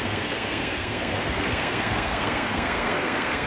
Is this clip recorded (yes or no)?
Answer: no